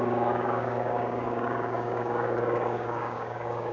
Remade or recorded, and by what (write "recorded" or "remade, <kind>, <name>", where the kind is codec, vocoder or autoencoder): remade, codec, DAC